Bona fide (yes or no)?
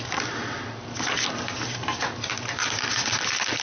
yes